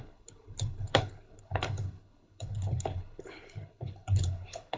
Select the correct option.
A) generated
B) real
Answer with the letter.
A